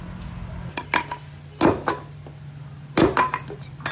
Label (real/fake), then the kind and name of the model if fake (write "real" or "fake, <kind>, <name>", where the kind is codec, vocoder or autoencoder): real